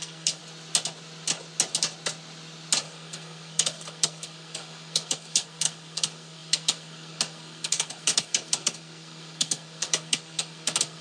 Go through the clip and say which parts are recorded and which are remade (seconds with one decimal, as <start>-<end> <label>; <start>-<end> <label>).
0.0-0.4 remade; 0.4-2.8 recorded; 2.8-11.0 remade